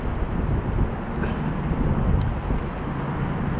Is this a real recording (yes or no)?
yes